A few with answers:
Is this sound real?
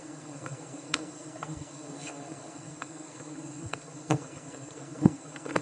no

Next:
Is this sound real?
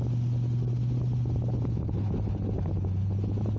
yes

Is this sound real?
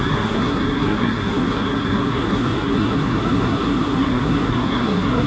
no